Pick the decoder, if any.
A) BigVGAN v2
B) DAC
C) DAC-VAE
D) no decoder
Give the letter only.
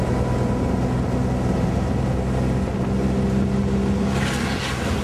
D